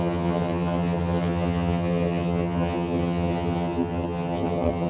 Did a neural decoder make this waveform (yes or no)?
yes